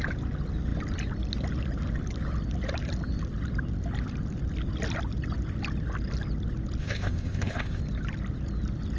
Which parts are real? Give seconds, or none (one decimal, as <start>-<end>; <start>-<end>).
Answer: 0.0-6.8; 7.8-9.0